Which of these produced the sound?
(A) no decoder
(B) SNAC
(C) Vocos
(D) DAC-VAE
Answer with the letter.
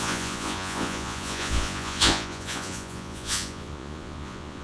C